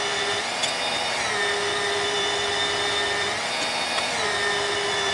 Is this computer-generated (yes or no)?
no